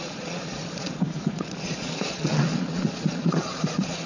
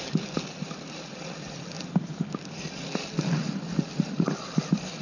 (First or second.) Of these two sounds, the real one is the second